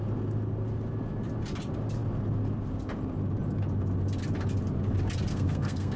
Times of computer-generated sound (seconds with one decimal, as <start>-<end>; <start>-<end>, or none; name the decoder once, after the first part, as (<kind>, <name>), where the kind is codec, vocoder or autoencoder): 5.3-6.0 (codec, SNAC)